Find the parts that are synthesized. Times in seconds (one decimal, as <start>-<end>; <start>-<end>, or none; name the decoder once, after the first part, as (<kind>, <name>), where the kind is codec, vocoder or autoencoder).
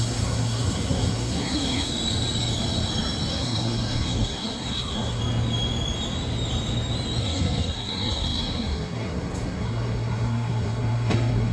0.0-1.9 (codec, SNAC); 3.3-5.2; 7.2-11.5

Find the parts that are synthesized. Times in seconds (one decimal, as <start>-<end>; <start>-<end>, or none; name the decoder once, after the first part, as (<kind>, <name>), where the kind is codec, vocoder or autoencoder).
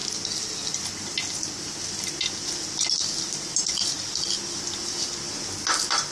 none